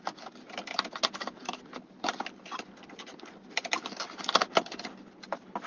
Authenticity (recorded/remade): recorded